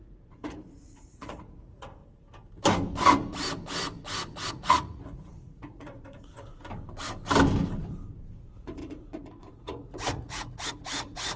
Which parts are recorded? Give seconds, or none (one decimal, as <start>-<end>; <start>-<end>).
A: 2.0-4.5; 6.5-8.4